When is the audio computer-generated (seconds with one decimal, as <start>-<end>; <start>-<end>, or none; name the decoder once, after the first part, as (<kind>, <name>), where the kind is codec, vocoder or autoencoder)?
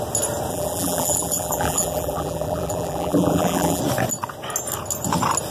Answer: 0.5-3.8 (vocoder, BigVGAN v2)